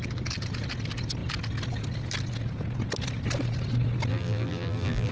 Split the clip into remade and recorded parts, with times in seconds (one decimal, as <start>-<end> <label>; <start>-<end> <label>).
0.0-4.1 recorded; 4.1-5.1 remade